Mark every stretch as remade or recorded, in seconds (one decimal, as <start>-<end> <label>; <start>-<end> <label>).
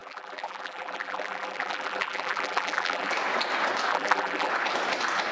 0.0-3.1 remade; 3.1-3.9 recorded; 3.9-4.5 remade; 4.5-5.3 recorded